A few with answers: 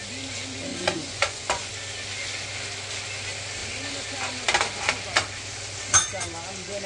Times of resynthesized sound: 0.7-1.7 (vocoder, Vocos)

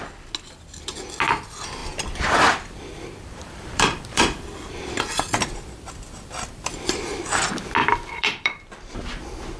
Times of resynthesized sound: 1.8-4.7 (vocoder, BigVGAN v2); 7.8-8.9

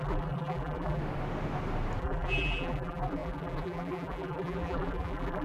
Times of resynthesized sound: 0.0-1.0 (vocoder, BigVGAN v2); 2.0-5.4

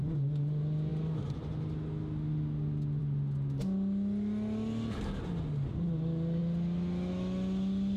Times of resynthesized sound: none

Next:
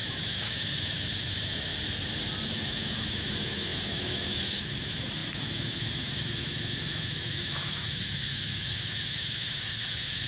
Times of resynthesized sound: 0.0-1.7 (autoencoder, DAC-VAE); 2.5-10.3

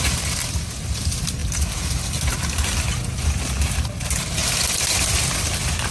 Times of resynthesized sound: 1.4-2.1 (vocoder, BigVGAN v2)

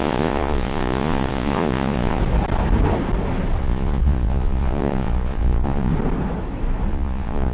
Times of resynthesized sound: 0.0-2.2 (vocoder, Vocos); 3.6-5.9; 6.9-7.5